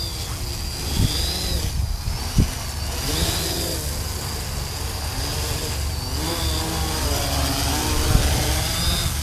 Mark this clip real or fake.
real